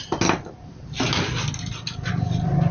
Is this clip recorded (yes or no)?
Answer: yes